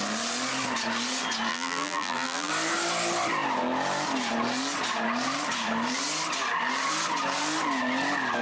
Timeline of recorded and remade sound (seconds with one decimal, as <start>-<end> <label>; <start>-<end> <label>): 0.0-1.5 recorded; 1.5-2.5 remade; 2.5-8.4 recorded